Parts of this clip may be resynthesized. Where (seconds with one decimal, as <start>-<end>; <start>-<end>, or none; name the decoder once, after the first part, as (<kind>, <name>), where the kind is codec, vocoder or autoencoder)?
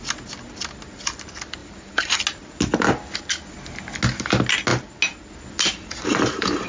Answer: 1.6-2.2 (vocoder, BigVGAN v2); 5.8-6.7